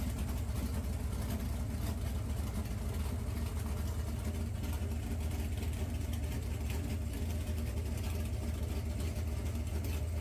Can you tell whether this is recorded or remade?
recorded